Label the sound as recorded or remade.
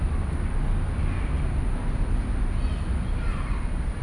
recorded